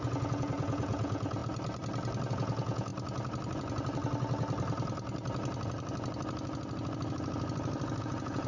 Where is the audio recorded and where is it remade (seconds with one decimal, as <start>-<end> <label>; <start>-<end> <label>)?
0.0-1.4 remade; 1.4-2.3 recorded; 2.3-2.9 remade; 2.9-8.0 recorded; 8.0-8.5 remade